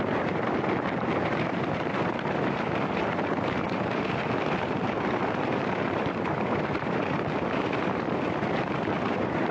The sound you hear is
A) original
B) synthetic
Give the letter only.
B